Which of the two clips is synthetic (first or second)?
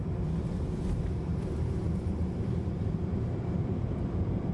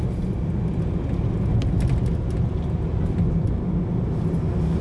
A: first